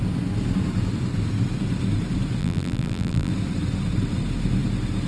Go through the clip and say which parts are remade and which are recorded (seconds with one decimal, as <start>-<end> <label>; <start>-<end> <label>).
0.0-2.4 recorded; 2.4-3.3 remade; 3.3-5.1 recorded